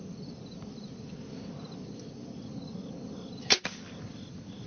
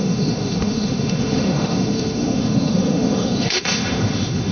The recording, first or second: first